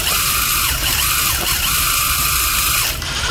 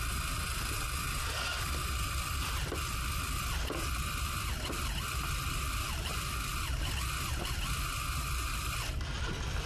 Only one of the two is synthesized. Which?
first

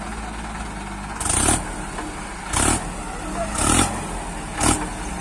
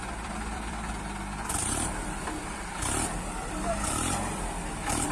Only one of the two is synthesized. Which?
second